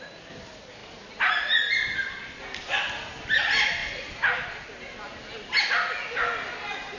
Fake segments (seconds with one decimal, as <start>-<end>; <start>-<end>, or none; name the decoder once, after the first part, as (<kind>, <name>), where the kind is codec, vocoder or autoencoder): none

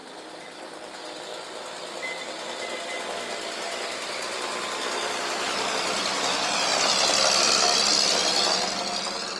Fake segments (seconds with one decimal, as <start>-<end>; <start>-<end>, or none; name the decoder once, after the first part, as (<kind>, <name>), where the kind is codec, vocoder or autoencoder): 0.0-1.2 (vocoder, BigVGAN v2)

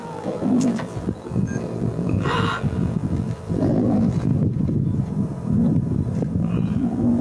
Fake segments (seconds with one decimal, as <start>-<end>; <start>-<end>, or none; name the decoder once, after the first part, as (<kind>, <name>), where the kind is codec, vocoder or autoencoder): 0.0-4.3 (vocoder, BigVGAN v2); 6.4-7.2

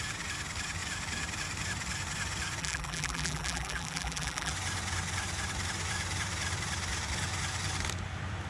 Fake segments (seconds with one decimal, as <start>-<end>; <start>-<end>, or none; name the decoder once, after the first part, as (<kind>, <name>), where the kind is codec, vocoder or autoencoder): 2.6-4.5 (vocoder, BigVGAN v2)